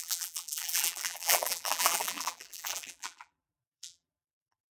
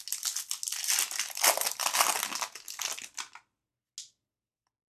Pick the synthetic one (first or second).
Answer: first